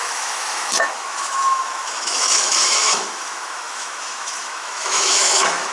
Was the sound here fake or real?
fake